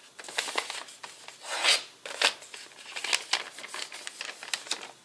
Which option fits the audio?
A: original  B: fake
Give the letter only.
A